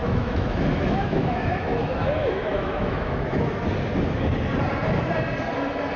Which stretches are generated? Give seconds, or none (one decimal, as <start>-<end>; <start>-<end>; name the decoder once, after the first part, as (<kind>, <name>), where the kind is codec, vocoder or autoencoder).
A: 0.0-3.6 (autoencoder, DAC-VAE)